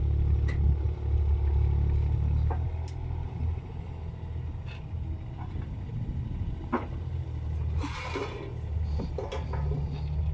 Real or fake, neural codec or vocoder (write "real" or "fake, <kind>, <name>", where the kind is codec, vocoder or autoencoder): real